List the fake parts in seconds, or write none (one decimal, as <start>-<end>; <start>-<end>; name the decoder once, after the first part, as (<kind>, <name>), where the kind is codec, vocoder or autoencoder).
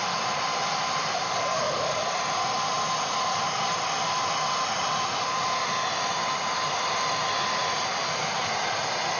1.5-2.2 (codec, DAC)